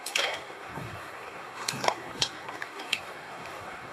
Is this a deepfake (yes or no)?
yes